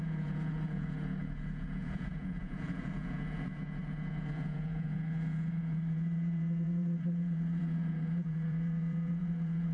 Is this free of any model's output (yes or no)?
no